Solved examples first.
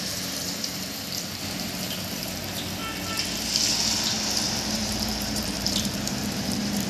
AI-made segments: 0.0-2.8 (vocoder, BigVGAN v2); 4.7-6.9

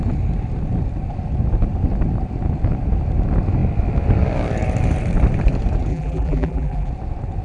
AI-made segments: 5.9-6.9 (vocoder, BigVGAN v2)

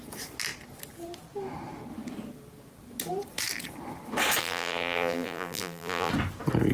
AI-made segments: 4.4-6.1 (vocoder, BigVGAN v2)